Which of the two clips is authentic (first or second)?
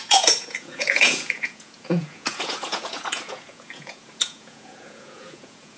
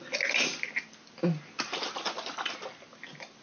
second